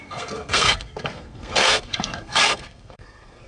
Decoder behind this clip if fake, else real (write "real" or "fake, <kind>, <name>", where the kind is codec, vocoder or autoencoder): fake, codec, SNAC